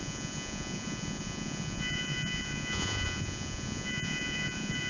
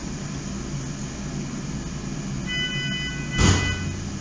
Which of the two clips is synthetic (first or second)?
first